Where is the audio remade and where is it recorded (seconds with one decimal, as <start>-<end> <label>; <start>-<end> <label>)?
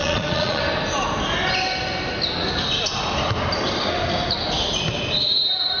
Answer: 0.0-0.6 remade; 0.6-5.8 recorded